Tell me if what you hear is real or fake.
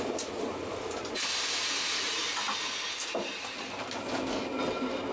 real